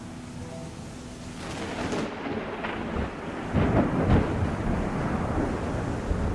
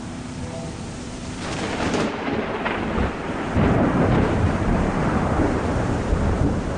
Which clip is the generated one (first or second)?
second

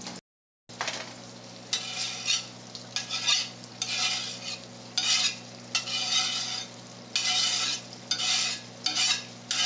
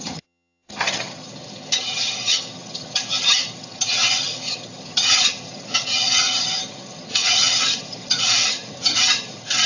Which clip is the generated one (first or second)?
second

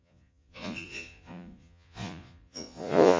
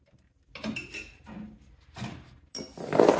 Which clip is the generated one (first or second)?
first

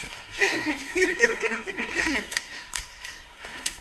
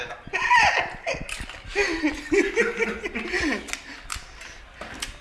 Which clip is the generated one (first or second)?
first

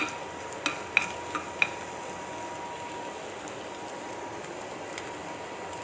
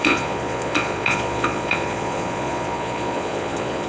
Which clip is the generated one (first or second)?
second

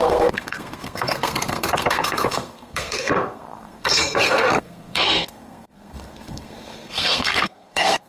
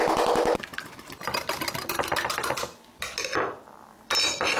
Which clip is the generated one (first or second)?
first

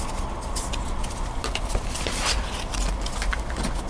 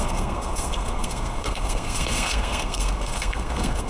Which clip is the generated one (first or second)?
second